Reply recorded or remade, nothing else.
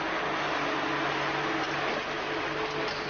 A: recorded